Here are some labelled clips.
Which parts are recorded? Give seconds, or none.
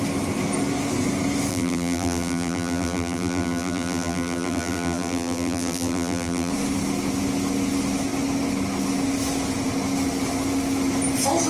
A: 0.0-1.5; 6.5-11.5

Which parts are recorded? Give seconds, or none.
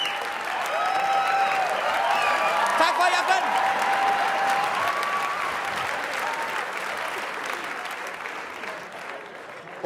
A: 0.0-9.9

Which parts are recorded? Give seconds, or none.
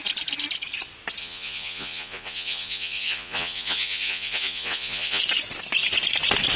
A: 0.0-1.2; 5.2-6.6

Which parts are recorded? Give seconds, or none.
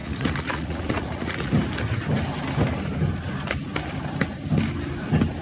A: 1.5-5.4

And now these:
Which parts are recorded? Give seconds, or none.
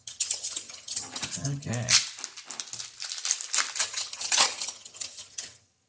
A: 1.7-3.8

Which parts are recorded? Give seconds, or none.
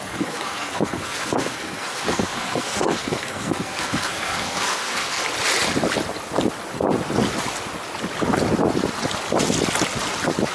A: 5.2-10.5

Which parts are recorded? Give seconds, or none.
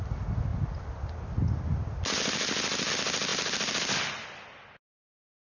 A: 0.0-5.4